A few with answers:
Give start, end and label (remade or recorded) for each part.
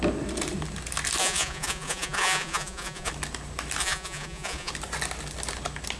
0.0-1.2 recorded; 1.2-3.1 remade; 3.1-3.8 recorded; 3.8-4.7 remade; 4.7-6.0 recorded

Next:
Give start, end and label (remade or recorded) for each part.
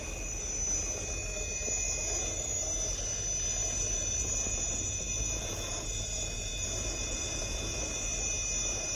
0.0-3.6 recorded; 3.6-8.3 remade; 8.3-8.9 recorded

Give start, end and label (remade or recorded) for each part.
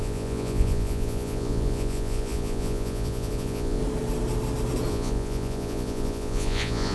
0.0-3.8 remade; 3.8-4.9 recorded; 4.9-6.9 remade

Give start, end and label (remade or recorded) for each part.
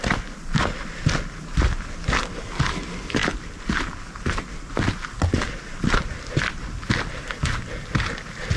0.0-8.6 recorded